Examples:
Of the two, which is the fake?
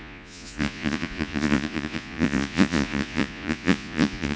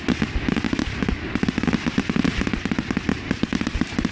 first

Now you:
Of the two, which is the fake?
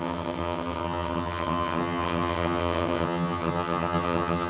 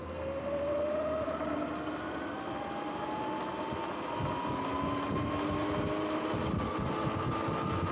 first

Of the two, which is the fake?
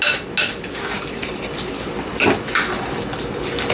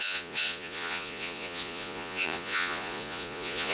second